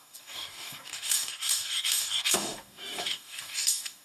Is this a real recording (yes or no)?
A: no